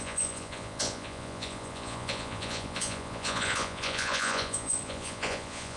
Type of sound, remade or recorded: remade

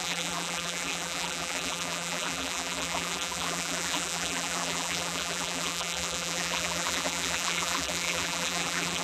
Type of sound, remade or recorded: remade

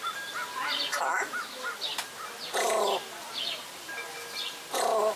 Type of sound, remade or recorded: recorded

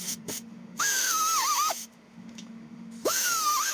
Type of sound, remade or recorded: remade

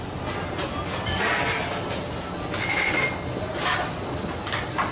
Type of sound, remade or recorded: recorded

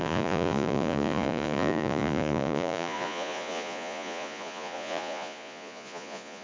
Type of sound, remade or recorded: remade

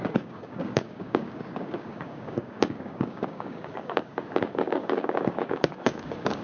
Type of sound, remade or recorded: remade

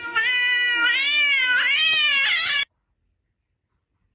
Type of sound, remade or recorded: recorded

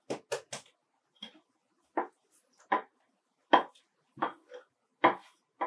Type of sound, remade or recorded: recorded